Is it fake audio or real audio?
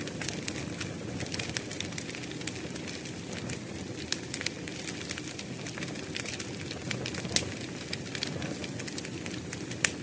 real